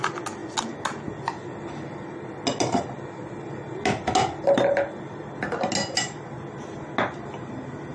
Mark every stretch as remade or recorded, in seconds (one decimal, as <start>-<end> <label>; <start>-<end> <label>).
0.0-7.9 recorded